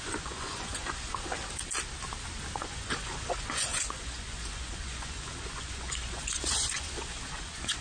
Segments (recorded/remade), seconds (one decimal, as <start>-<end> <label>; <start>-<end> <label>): 0.0-1.1 remade; 1.1-2.6 recorded; 2.6-7.8 remade